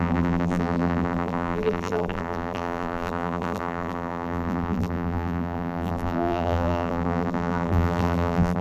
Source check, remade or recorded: remade